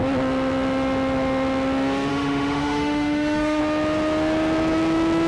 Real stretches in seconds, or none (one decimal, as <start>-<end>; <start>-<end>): 0.0-2.1; 3.6-5.3